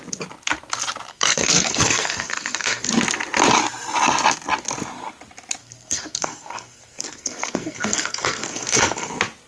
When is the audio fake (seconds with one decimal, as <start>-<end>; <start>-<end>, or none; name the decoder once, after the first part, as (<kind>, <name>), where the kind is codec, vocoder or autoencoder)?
1.1-2.9 (codec, SNAC); 5.6-9.1